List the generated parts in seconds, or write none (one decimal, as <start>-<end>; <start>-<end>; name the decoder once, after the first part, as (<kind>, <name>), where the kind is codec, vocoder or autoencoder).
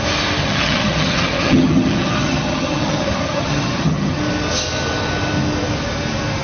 0.4-4.2 (vocoder, HiFi-GAN)